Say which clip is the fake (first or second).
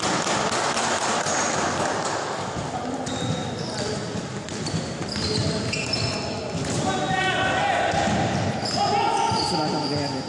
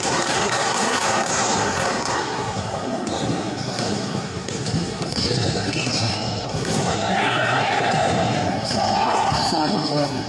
second